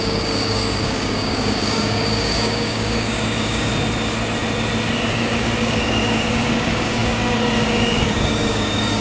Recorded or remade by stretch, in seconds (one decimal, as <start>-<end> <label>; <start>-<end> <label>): 0.0-3.7 remade; 3.7-5.1 recorded; 5.1-9.0 remade